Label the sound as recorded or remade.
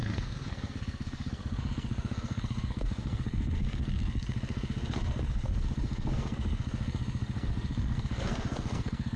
remade